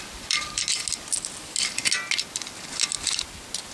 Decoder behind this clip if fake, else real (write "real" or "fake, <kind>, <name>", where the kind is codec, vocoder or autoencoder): real